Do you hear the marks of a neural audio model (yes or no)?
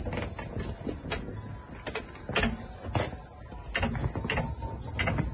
no